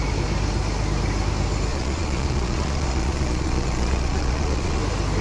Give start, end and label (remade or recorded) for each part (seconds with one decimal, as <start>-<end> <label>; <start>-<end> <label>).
0.0-1.7 recorded; 1.7-4.8 remade; 4.8-5.2 recorded